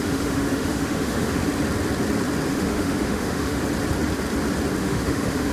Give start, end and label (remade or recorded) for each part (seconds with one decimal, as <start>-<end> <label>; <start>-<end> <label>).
0.0-1.4 remade; 1.4-2.5 recorded; 2.5-3.6 remade; 3.6-4.8 recorded; 4.8-5.5 remade